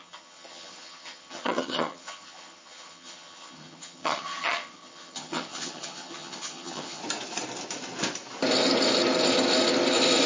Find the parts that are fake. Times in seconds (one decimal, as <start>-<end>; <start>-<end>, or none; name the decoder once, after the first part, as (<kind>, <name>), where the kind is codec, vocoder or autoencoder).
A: 0.0-7.0 (vocoder, HiFi-GAN)